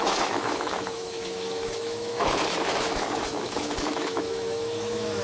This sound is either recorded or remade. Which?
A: remade